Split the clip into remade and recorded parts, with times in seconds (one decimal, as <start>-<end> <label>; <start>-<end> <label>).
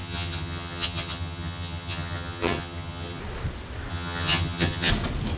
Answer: 0.0-3.2 remade; 3.2-3.9 recorded; 3.9-4.9 remade; 4.9-5.4 recorded